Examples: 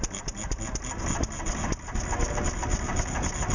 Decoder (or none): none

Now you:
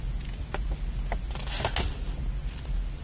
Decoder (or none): none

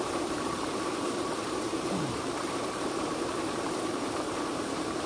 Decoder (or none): vocoder, BigVGAN v2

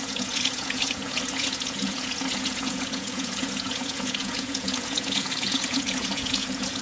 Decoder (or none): vocoder, Vocos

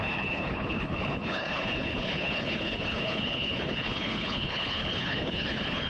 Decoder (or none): codec, HILCodec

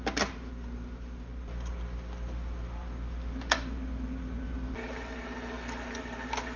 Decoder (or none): none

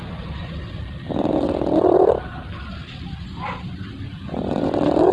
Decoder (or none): none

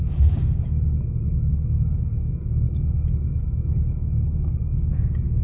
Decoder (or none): codec, DAC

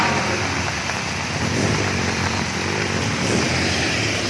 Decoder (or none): none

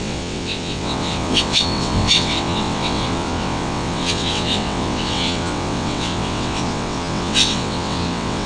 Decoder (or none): vocoder, WaveNeXt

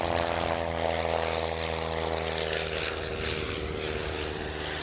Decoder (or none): none